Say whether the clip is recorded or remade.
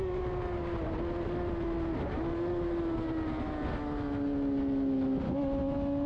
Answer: recorded